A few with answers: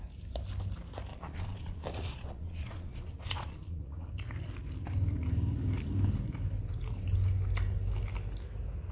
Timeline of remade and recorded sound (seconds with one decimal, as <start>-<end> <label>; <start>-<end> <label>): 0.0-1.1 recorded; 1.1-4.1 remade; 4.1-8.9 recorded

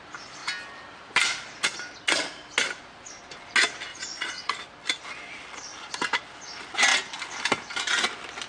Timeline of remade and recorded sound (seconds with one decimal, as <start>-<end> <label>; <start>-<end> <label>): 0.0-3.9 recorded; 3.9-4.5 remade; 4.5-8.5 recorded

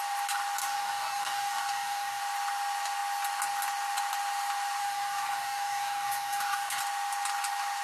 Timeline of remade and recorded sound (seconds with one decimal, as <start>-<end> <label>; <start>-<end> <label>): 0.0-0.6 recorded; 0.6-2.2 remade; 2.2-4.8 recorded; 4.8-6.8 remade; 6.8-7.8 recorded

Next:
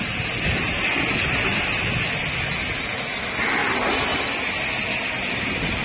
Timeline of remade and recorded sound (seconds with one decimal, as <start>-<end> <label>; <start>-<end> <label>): 0.0-5.8 recorded

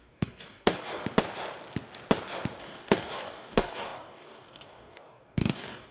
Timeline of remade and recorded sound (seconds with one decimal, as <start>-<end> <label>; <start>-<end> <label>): 0.0-1.0 remade; 1.0-2.6 recorded; 2.6-5.9 remade

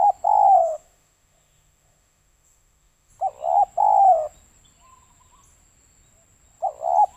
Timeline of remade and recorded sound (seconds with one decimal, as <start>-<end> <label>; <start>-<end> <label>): 0.0-0.6 recorded; 0.6-3.1 remade; 3.1-7.2 recorded